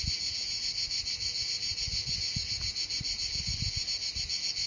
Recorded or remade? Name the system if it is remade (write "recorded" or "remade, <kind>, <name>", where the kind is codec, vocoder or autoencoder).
recorded